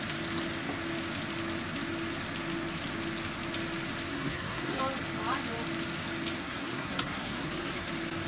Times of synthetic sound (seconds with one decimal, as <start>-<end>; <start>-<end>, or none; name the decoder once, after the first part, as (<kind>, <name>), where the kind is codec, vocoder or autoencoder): 4.1-4.8 (codec, SNAC); 6.4-7.9

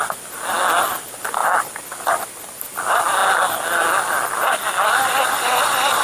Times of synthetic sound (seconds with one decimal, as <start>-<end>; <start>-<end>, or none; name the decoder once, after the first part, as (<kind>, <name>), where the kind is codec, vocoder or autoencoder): none

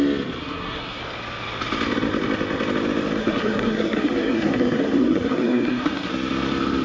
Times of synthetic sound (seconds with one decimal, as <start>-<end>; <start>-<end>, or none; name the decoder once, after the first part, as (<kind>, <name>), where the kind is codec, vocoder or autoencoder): 0.4-1.0 (codec, SNAC); 3.2-6.1

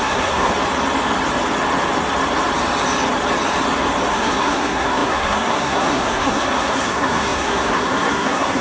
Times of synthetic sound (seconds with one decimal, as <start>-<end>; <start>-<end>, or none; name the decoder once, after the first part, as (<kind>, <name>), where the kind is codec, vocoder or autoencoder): 0.0-0.5 (codec, SNAC); 4.1-8.6